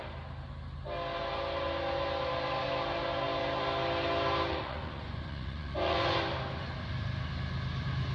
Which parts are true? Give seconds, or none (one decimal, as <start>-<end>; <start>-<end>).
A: 0.0-4.5; 6.2-8.1